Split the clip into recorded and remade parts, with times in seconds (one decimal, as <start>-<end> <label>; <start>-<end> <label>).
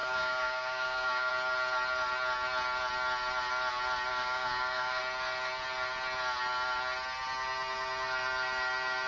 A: 0.0-1.3 remade; 1.3-4.1 recorded; 4.1-5.0 remade; 5.0-9.1 recorded